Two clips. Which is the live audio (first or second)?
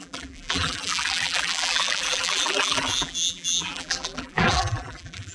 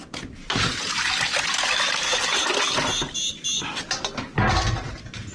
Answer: second